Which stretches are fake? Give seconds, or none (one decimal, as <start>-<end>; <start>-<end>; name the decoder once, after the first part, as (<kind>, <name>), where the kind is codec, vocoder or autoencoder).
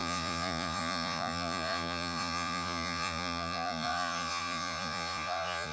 0.0-5.7 (vocoder, Vocos)